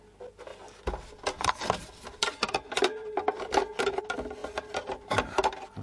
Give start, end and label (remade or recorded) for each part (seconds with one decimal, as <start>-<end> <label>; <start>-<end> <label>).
0.0-0.5 recorded; 0.5-4.0 remade; 4.0-5.8 recorded